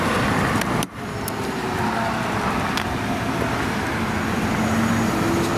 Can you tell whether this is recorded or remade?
recorded